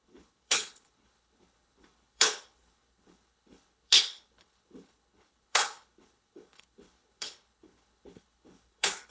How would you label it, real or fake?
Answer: fake